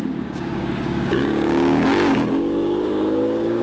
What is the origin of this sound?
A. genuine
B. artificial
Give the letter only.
B